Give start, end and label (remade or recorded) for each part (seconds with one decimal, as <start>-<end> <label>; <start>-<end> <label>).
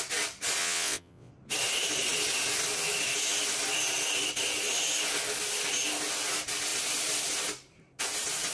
0.0-0.6 recorded; 0.6-1.3 remade; 1.3-8.5 recorded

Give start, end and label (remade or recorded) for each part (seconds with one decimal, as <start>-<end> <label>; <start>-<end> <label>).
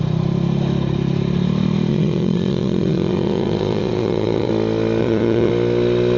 0.0-1.9 recorded; 1.9-4.5 remade; 4.5-5.0 recorded; 5.0-5.5 remade; 5.5-6.2 recorded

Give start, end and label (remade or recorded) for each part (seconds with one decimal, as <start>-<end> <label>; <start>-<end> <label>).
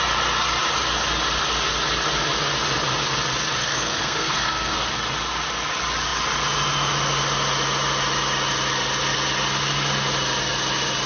0.0-3.6 recorded; 3.6-4.9 remade; 4.9-11.1 recorded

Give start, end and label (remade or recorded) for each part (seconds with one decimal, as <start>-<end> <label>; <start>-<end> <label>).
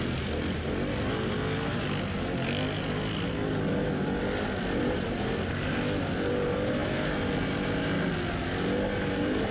0.0-9.5 recorded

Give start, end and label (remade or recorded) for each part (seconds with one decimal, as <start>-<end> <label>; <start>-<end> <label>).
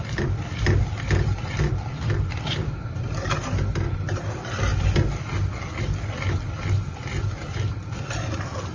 0.0-1.3 remade; 1.3-1.9 recorded; 1.9-2.6 remade; 2.6-3.3 recorded; 3.3-4.7 remade; 4.7-6.9 recorded; 6.9-8.7 remade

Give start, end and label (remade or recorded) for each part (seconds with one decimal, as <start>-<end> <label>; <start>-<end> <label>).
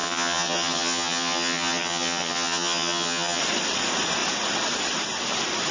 0.0-3.4 remade; 3.4-5.7 recorded